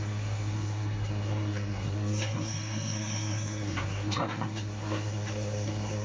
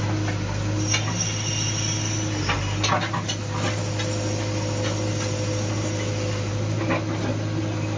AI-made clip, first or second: first